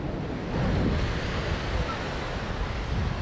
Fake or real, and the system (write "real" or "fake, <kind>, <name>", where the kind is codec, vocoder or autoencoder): real